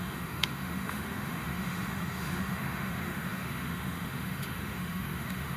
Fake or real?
fake